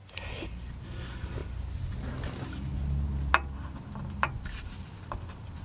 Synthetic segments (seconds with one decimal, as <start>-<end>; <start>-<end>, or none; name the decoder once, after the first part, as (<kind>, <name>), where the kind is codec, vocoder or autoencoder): none